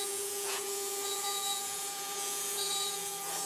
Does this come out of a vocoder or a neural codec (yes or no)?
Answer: yes